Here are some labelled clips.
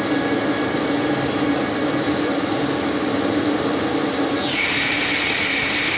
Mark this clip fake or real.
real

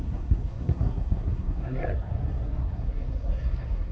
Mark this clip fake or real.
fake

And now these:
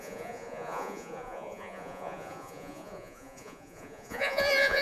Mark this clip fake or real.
fake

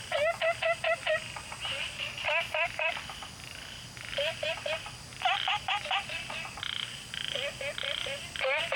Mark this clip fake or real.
real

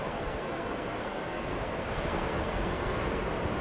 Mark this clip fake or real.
fake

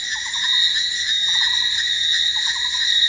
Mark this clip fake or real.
real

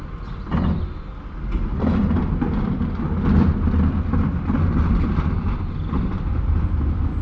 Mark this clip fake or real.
real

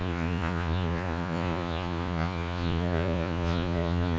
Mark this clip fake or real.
fake